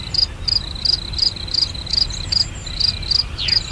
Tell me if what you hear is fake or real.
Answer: real